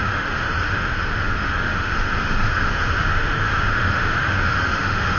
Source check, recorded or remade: remade